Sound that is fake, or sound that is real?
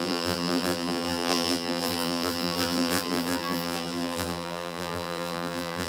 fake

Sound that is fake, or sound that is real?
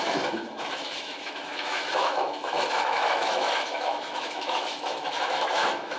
fake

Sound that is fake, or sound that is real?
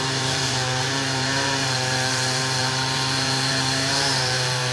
fake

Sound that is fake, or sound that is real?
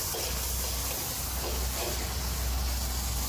real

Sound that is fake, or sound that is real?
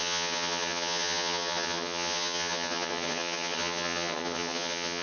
fake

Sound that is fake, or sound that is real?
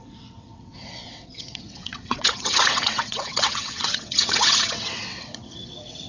fake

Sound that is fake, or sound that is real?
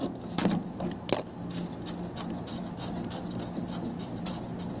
real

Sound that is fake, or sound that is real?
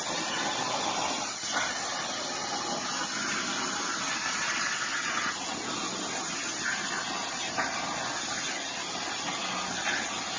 real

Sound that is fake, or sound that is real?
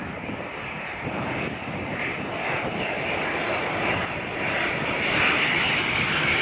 fake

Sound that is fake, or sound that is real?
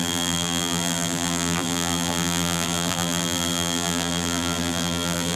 fake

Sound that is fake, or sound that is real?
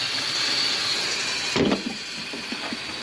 real